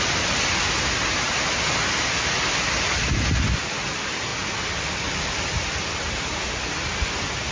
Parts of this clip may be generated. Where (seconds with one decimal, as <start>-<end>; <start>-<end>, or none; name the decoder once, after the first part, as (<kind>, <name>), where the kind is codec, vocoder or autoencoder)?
none